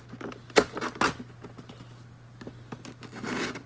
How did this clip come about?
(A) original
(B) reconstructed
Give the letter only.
A